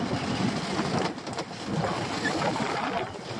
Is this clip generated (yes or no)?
no